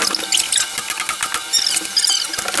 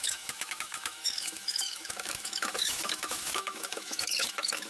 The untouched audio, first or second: first